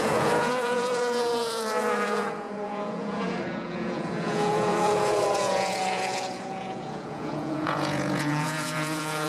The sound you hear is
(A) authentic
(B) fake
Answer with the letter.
B